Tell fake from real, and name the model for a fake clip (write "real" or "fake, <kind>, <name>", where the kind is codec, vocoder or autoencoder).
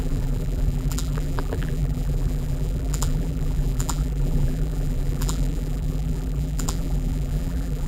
fake, vocoder, BigVGAN v2